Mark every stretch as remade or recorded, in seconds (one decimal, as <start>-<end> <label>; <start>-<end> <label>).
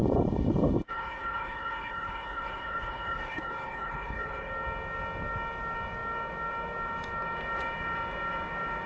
0.0-4.5 remade; 4.5-8.9 recorded